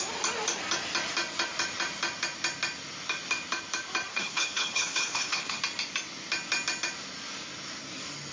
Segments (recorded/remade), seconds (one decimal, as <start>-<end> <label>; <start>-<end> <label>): 0.0-4.1 recorded; 4.1-5.6 remade; 5.6-8.3 recorded